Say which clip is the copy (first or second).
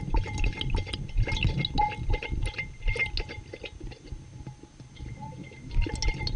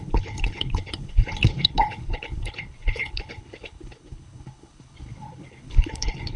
second